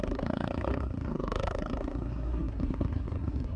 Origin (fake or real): fake